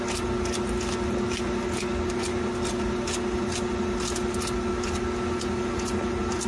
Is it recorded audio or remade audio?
recorded